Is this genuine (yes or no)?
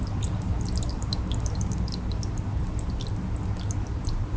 yes